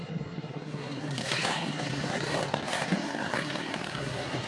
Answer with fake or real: fake